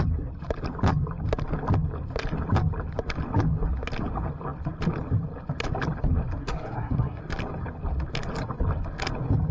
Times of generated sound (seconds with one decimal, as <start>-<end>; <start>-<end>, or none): 6.4-7.2